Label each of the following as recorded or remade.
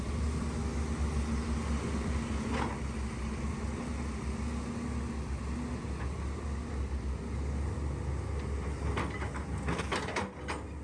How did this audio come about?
recorded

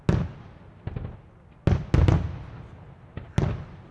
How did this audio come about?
recorded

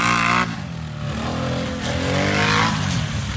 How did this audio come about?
recorded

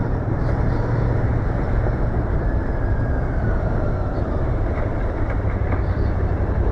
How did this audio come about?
remade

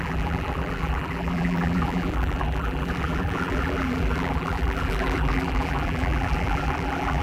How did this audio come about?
remade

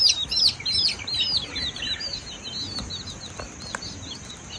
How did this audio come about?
recorded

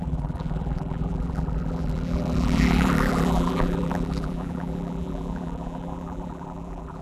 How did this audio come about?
remade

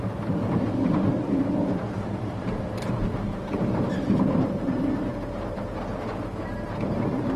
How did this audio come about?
remade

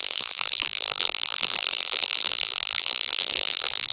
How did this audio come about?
remade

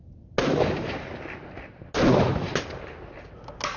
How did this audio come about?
recorded